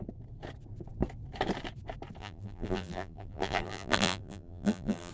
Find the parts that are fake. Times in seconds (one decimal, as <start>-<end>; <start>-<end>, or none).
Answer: 2.2-5.1